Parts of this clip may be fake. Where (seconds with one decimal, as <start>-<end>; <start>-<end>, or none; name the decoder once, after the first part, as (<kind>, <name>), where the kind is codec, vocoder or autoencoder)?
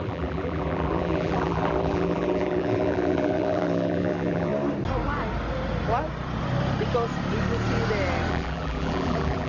0.0-4.5 (vocoder, BigVGAN v2); 8.3-9.5